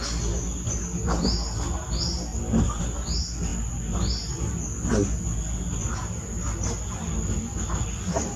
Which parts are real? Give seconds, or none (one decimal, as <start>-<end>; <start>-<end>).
0.0-8.4